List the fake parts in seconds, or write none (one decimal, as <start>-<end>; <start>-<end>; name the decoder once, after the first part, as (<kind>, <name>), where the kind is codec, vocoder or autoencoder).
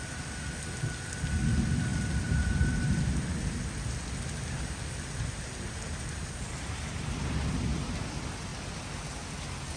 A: none